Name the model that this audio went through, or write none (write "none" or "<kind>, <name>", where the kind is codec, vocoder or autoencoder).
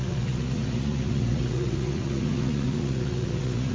vocoder, Vocos